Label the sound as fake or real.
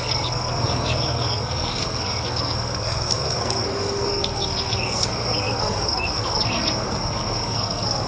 fake